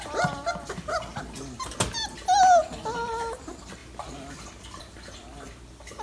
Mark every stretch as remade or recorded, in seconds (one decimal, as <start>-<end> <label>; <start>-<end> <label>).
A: 0.0-3.8 recorded; 3.8-4.8 remade; 4.8-6.0 recorded